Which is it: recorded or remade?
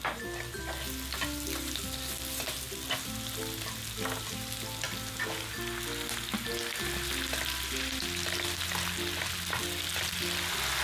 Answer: recorded